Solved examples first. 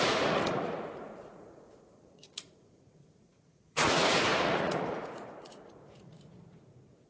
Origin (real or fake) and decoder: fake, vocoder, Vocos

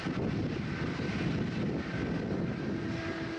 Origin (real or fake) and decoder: real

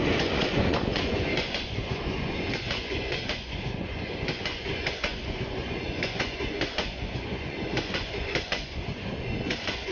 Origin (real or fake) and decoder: fake, vocoder, Vocos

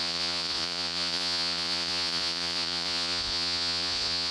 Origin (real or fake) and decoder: fake, vocoder, Vocos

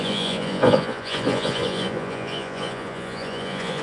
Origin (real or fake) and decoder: fake, vocoder, Vocos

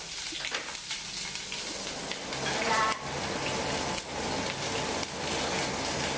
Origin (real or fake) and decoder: real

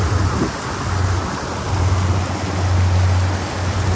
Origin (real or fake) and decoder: real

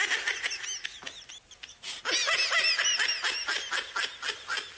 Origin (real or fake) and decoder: real